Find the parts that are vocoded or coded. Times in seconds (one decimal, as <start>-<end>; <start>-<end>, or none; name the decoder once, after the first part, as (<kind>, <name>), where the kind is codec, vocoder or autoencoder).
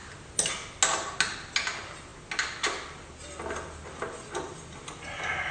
none